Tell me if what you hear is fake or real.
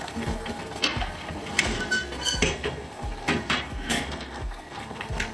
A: fake